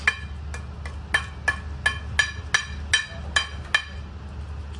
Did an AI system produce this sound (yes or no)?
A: no